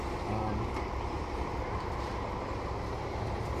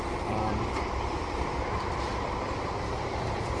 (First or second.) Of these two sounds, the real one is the first